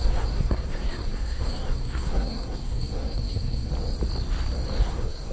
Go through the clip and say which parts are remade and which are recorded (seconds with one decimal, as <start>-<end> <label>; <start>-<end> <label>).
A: 0.0-3.7 remade; 3.7-4.8 recorded; 4.8-5.3 remade

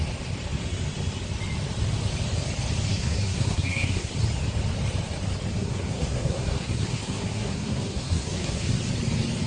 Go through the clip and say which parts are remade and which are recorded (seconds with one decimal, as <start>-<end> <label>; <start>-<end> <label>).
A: 0.0-2.9 recorded; 2.9-4.1 remade; 4.1-5.5 recorded; 5.5-8.8 remade; 8.8-9.5 recorded

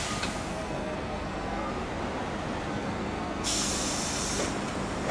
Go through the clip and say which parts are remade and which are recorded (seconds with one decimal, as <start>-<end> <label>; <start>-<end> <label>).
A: 0.0-0.5 recorded; 0.5-1.7 remade; 1.7-2.7 recorded; 2.7-3.7 remade; 3.7-5.1 recorded

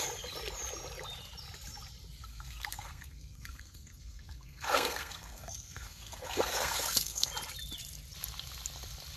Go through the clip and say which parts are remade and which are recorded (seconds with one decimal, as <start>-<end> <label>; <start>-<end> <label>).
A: 0.0-2.3 recorded; 2.3-7.3 remade; 7.3-9.2 recorded